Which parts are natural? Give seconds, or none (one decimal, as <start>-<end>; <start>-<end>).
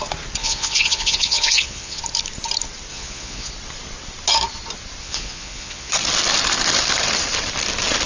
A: 0.0-0.4; 2.0-2.9; 3.5-5.0; 5.9-8.1